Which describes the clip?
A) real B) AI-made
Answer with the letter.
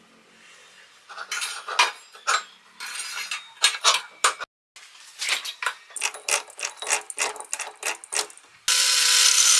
A